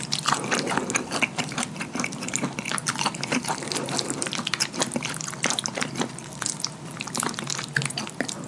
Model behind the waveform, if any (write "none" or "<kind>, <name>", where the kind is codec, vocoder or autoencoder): none